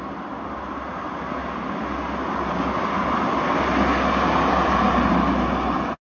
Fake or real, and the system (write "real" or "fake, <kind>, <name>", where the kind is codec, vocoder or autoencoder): real